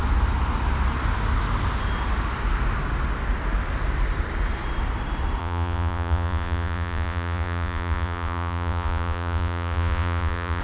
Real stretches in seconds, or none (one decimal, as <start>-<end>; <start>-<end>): 0.0-5.4